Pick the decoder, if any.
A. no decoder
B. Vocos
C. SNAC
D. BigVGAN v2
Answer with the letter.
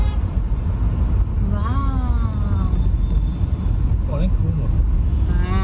A